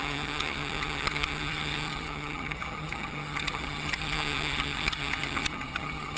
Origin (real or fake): fake